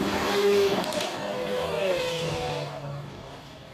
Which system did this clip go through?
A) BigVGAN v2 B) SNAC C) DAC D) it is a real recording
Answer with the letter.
C